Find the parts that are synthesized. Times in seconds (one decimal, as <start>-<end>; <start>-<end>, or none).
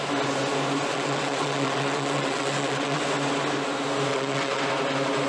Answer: 0.9-3.0; 4.1-4.6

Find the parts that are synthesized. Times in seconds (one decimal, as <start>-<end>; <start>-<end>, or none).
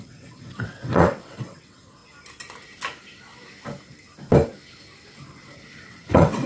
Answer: 0.0-2.0; 5.9-6.5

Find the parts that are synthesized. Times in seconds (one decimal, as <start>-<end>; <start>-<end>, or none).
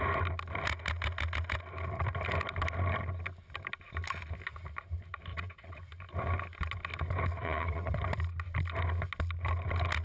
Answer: 5.3-5.8; 7.4-8.0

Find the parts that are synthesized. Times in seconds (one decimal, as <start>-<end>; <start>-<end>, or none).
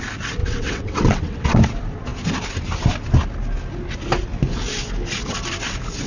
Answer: 0.4-1.6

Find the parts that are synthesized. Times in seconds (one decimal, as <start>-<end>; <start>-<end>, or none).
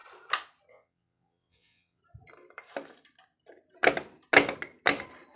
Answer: 0.7-2.0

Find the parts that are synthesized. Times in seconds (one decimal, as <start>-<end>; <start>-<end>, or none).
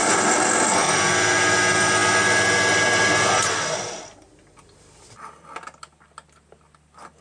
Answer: none